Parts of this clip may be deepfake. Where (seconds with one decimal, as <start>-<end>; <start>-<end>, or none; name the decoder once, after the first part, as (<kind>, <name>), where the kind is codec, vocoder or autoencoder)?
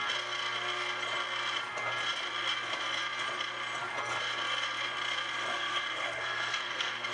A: 5.5-7.1 (codec, SNAC)